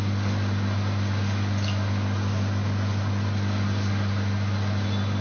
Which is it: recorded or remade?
recorded